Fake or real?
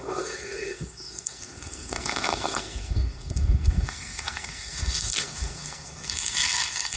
fake